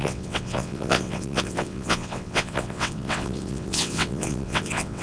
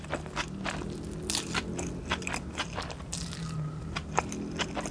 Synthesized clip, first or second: first